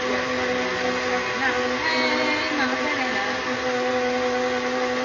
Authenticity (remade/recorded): recorded